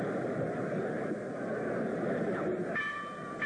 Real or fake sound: real